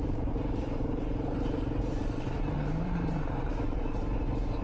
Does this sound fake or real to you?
fake